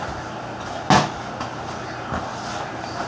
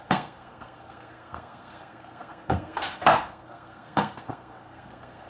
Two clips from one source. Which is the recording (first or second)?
first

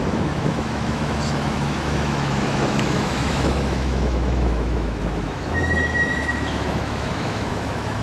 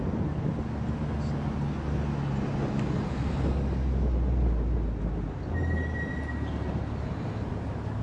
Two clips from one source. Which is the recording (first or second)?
second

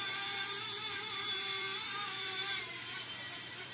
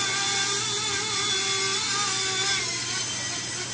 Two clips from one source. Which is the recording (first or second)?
second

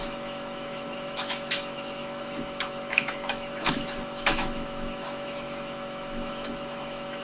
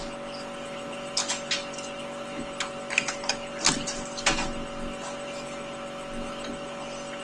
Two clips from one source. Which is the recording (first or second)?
second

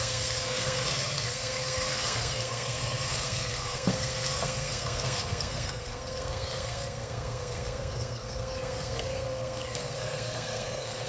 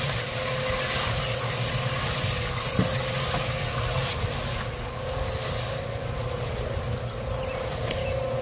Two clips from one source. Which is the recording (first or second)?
second